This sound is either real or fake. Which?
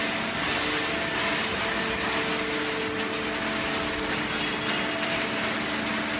real